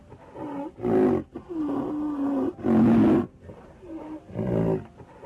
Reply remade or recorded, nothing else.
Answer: recorded